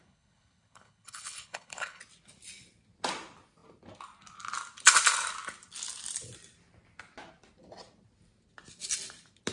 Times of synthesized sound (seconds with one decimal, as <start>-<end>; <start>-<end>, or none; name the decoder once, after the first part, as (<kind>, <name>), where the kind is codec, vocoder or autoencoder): 0.0-2.0 (codec, HILCodec)